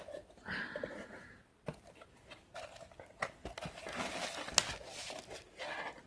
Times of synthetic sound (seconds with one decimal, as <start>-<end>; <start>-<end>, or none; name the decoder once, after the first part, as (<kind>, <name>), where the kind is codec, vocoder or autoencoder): none